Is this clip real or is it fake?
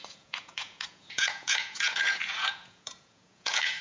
fake